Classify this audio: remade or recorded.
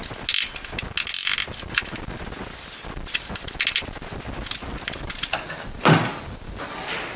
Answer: recorded